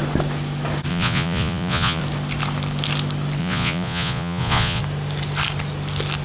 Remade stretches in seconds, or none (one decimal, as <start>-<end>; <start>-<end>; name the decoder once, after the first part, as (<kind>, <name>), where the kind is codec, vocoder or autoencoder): 0.9-2.0 (vocoder, Vocos); 3.4-4.8